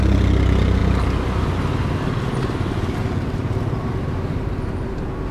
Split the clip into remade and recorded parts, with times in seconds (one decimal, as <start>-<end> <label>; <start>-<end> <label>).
0.0-5.3 recorded